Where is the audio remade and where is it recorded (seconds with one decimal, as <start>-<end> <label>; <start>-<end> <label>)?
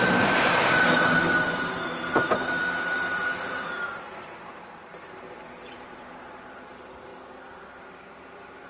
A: 0.0-7.1 remade; 7.1-7.9 recorded; 7.9-8.7 remade